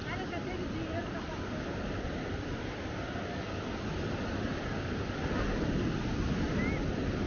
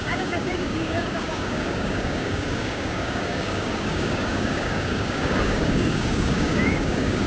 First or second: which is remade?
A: second